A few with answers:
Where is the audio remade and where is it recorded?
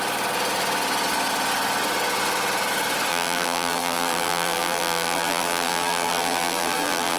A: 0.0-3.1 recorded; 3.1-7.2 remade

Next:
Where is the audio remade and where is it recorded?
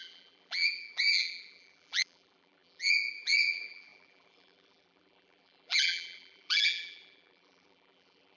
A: 0.0-8.4 remade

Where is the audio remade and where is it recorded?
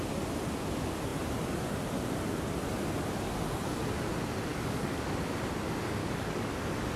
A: 0.0-4.5 recorded; 4.5-5.1 remade; 5.1-6.0 recorded; 6.0-6.5 remade; 6.5-7.0 recorded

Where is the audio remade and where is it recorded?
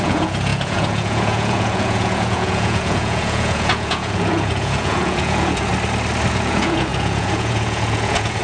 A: 0.0-5.7 remade; 5.7-6.3 recorded; 6.3-8.4 remade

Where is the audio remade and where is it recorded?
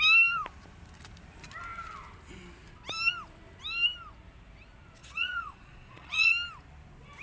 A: 0.0-5.0 recorded; 5.0-6.3 remade; 6.3-7.2 recorded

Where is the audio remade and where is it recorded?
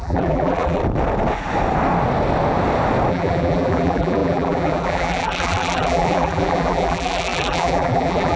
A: 0.0-0.8 remade; 0.8-3.1 recorded; 3.1-8.4 remade